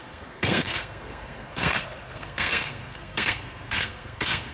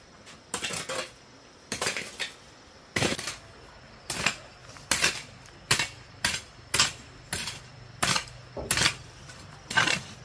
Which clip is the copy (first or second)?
first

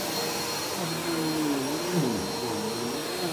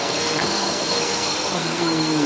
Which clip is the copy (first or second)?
second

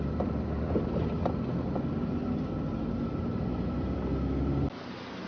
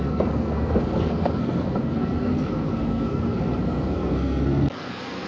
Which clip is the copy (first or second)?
second